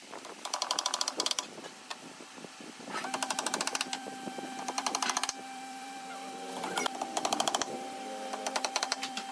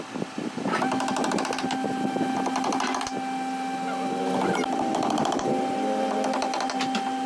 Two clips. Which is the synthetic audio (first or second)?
first